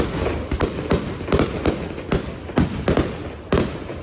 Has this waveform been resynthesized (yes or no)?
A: no